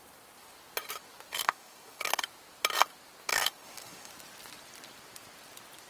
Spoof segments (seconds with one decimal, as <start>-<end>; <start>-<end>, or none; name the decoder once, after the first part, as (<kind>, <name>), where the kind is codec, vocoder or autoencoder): 1.3-2.1 (codec, DAC); 3.3-4.1